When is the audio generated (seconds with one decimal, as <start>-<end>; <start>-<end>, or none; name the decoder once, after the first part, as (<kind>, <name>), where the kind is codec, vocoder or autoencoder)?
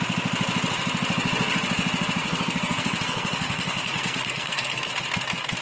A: 2.2-4.9 (codec, SNAC)